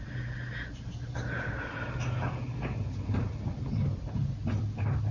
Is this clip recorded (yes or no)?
yes